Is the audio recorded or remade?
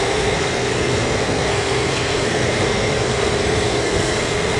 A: remade